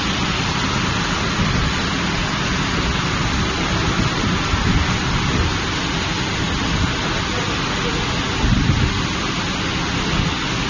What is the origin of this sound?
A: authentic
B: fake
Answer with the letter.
A